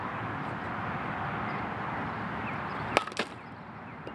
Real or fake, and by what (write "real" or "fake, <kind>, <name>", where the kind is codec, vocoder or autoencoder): real